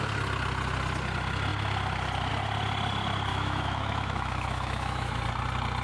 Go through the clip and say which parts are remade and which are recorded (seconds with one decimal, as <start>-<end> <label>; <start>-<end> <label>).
0.0-3.3 recorded; 3.3-5.2 remade; 5.2-5.8 recorded